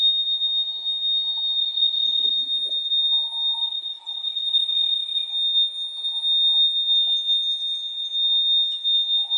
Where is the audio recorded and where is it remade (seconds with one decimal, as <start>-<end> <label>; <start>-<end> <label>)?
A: 0.0-1.6 recorded; 1.6-2.3 remade; 2.3-3.6 recorded; 3.6-5.3 remade; 5.3-9.4 recorded